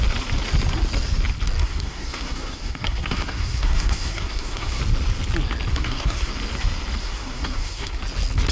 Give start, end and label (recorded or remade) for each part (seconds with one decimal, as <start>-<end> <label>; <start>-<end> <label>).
0.0-1.6 recorded; 1.6-4.8 remade; 4.8-5.7 recorded; 5.7-6.3 remade; 6.3-7.0 recorded; 7.0-8.0 remade; 8.0-8.5 recorded